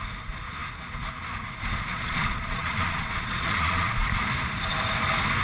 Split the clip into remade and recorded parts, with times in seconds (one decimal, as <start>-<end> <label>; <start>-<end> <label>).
0.0-1.9 recorded; 1.9-4.0 remade; 4.0-5.4 recorded